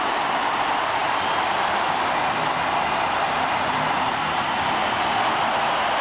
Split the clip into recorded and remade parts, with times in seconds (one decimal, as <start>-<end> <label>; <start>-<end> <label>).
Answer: 0.0-6.0 recorded